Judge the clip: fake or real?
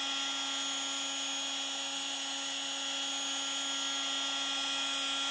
real